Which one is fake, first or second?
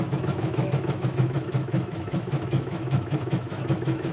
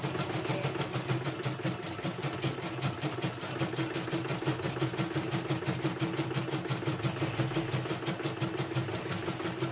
first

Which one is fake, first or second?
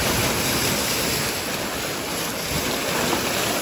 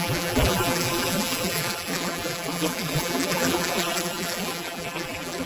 second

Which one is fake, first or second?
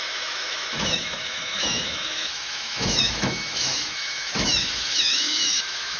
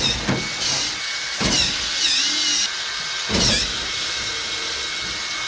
first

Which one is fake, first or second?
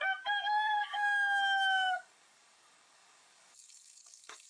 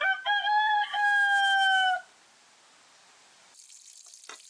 first